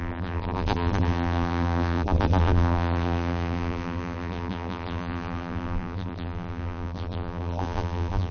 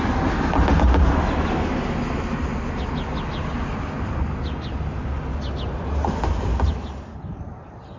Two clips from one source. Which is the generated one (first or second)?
first